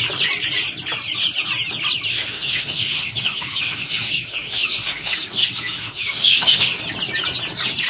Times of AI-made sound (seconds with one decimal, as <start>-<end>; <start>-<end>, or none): 2.1-6.8